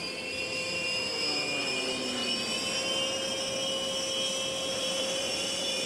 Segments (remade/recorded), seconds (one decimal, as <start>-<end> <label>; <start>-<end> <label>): 0.0-2.2 remade; 2.2-4.7 recorded; 4.7-5.9 remade